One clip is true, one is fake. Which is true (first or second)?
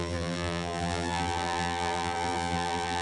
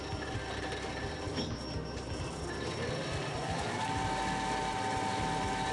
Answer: second